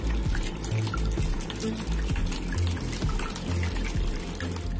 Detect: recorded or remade recorded